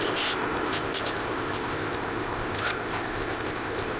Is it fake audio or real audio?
fake